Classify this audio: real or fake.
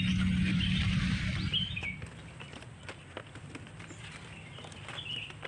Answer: fake